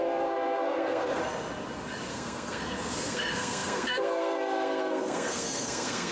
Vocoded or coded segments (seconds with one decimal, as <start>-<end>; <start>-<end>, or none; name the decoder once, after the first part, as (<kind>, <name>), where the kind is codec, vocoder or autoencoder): 0.0-1.2 (codec, SNAC); 2.1-6.1